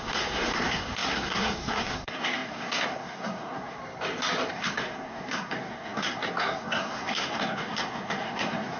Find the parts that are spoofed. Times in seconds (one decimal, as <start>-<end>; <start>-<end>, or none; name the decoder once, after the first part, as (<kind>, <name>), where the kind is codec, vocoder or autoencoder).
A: 0.0-3.8 (codec, SNAC); 4.5-8.8